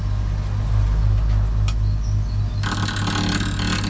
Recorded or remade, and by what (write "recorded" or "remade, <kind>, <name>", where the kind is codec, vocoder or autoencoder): recorded